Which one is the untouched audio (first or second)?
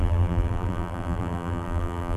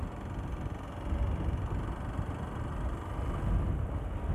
second